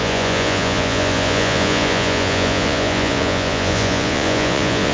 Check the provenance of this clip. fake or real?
fake